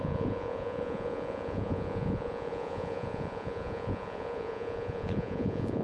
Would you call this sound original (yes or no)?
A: no